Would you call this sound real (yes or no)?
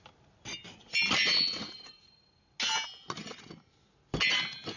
yes